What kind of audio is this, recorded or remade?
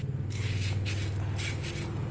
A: recorded